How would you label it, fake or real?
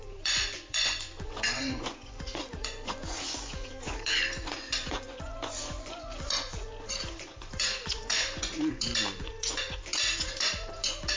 fake